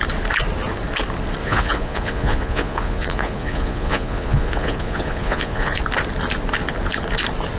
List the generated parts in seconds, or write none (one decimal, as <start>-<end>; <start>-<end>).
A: 1.4-5.8